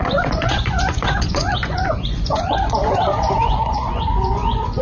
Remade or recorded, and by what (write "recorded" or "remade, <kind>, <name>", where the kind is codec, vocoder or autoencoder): remade, vocoder, Vocos